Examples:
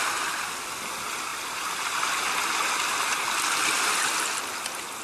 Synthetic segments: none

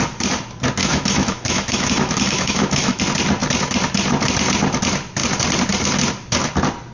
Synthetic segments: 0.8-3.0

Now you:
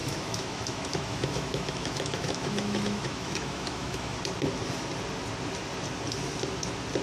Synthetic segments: 0.0-4.2

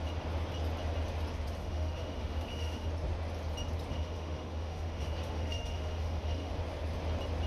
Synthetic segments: 1.6-2.9; 3.9-6.5